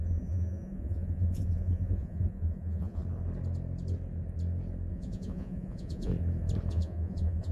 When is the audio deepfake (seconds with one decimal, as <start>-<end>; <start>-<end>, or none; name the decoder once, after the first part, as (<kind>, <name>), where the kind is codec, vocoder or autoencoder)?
0.0-3.0 (vocoder, Vocos); 4.9-6.1; 6.7-7.5

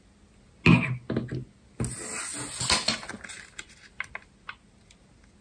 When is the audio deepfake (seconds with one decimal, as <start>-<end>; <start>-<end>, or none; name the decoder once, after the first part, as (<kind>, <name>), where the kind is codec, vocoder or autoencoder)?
none